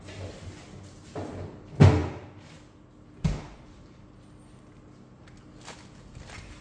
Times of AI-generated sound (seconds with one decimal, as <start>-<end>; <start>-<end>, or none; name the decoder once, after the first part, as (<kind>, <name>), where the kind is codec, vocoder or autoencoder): none